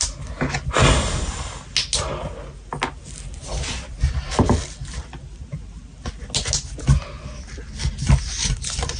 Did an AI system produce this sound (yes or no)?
no